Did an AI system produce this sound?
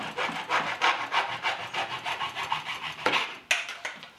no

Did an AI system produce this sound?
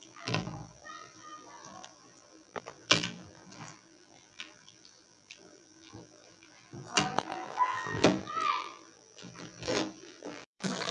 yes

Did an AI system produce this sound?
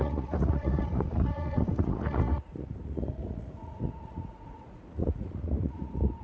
yes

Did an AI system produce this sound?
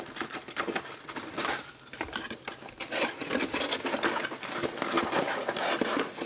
yes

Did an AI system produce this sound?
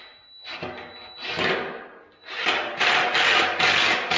no